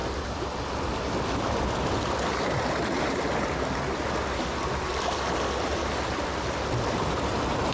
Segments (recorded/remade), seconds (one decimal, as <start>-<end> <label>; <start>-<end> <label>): 0.0-7.7 recorded